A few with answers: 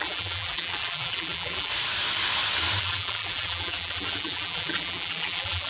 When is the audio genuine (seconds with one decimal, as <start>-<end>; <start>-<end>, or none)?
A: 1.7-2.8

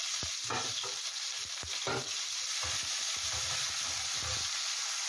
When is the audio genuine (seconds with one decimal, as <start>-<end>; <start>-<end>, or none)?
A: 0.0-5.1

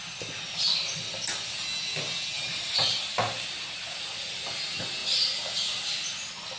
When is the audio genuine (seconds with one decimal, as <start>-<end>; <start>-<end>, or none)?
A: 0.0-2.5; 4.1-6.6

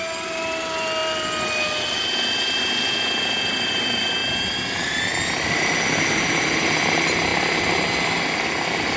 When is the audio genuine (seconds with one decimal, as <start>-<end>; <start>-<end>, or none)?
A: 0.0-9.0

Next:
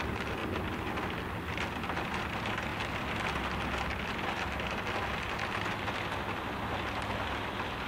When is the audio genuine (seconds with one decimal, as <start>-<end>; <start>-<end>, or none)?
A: 0.4-2.1; 2.7-7.2

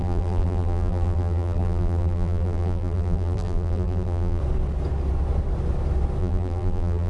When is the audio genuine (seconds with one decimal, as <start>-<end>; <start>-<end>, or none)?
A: 4.4-6.2

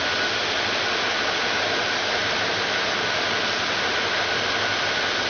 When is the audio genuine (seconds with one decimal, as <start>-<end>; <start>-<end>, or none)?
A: 0.0-5.3

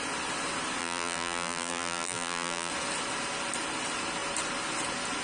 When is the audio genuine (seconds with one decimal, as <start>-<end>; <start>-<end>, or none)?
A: 0.0-0.8; 2.7-5.2